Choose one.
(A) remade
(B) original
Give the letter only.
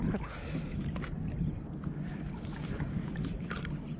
B